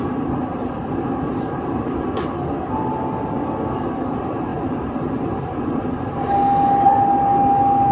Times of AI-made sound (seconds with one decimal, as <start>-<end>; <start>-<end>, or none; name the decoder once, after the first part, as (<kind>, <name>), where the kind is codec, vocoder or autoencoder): none